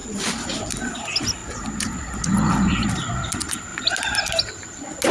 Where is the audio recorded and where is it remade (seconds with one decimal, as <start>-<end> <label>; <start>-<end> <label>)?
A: 0.0-5.1 recorded

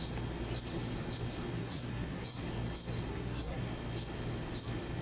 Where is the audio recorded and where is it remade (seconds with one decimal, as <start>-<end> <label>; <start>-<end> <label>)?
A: 0.0-1.6 recorded; 1.6-2.4 remade; 2.4-3.1 recorded; 3.1-3.6 remade; 3.6-5.0 recorded

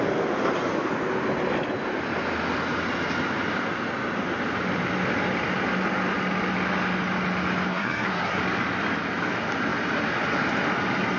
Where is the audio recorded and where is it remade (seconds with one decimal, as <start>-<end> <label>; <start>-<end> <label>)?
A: 0.0-7.7 recorded; 7.7-8.4 remade; 8.4-11.2 recorded

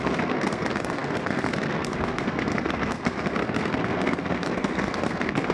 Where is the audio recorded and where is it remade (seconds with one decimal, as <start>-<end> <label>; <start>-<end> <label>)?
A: 0.0-5.5 remade

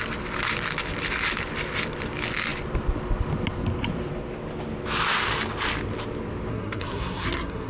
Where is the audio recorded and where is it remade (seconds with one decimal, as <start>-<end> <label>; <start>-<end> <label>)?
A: 0.0-6.5 recorded; 6.5-7.7 remade

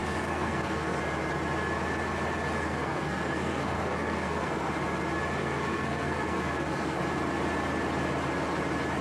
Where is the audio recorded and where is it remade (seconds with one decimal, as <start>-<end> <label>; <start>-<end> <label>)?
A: 0.0-1.0 remade; 1.0-2.6 recorded; 2.6-4.7 remade; 4.7-5.4 recorded; 5.4-7.0 remade; 7.0-9.0 recorded

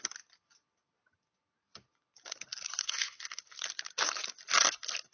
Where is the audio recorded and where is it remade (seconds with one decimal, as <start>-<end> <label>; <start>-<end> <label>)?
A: 0.0-2.8 recorded; 2.8-3.4 remade; 3.4-5.1 recorded

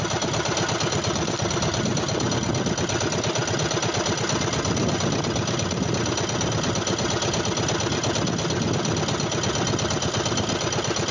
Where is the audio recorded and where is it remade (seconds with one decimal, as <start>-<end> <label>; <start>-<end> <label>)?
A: 0.0-11.1 recorded